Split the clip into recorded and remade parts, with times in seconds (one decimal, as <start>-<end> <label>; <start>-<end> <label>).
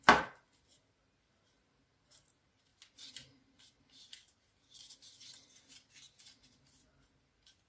0.0-7.7 recorded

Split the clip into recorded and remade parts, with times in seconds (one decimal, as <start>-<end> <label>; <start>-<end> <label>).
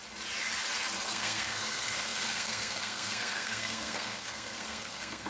0.0-1.1 recorded; 1.1-5.3 remade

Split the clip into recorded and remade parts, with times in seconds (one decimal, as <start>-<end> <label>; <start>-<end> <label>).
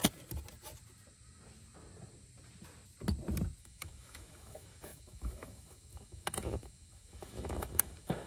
0.0-3.6 recorded; 3.6-8.3 remade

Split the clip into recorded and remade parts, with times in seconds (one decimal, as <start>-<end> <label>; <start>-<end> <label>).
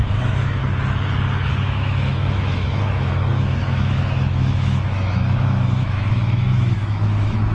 0.0-0.6 remade; 0.6-1.5 recorded; 1.5-7.5 remade